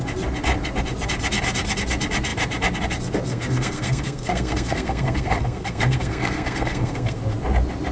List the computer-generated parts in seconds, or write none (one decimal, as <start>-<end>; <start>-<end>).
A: 3.3-7.2